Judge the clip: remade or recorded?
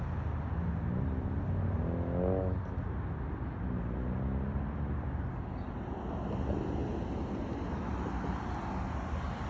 recorded